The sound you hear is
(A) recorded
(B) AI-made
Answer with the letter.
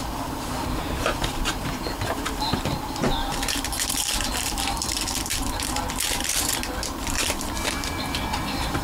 B